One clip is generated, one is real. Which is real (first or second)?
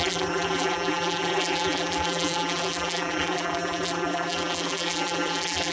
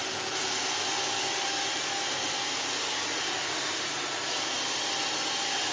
second